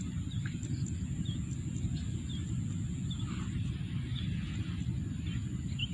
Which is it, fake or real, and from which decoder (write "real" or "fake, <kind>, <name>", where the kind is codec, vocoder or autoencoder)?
real